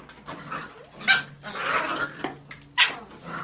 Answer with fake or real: real